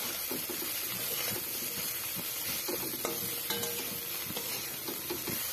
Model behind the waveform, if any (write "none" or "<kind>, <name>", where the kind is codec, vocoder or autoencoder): none